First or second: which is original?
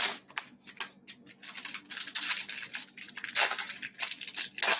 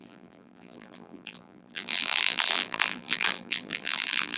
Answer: first